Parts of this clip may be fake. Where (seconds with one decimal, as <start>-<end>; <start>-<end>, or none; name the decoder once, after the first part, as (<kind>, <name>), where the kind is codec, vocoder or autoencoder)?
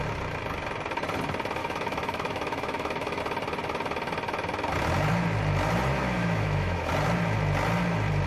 1.6-3.2 (autoencoder, DAC-VAE); 6.0-6.9